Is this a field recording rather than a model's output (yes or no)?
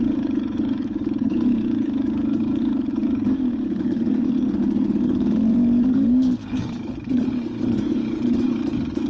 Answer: no